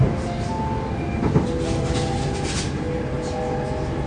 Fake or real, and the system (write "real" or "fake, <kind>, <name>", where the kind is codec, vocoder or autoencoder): real